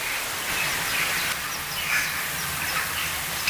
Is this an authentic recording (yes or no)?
yes